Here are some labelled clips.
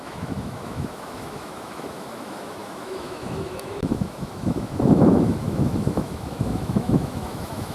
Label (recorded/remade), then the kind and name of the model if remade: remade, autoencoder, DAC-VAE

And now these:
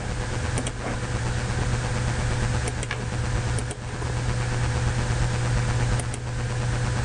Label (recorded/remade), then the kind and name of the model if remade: recorded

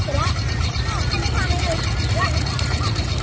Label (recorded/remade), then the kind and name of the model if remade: recorded